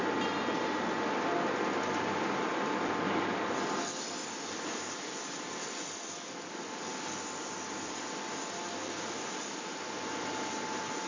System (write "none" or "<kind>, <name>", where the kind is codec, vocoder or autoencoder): none